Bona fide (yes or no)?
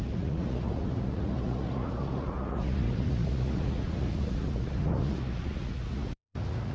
no